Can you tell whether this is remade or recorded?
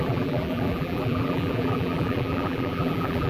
remade